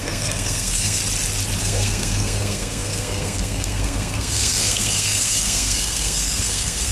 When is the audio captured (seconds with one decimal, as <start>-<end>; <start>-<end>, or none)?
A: 1.0-1.6